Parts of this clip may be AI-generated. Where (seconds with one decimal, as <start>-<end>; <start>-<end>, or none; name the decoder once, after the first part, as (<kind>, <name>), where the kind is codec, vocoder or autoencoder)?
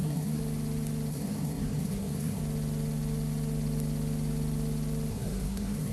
0.0-0.4 (codec, SNAC); 1.1-2.4; 5.1-5.9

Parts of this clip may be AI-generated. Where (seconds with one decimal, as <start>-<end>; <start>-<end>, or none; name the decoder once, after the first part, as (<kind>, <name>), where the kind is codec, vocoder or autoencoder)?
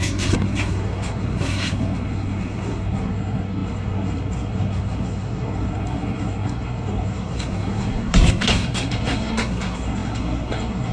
0.0-10.9 (codec, SNAC)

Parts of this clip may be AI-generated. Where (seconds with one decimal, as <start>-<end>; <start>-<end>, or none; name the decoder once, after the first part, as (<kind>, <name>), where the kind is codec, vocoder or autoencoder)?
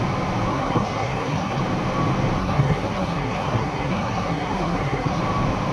0.5-1.6 (codec, SNAC); 2.4-5.2